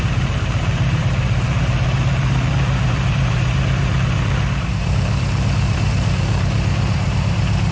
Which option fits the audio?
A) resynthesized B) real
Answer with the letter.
A